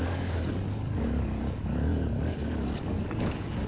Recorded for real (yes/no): no